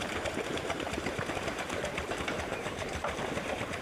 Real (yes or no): no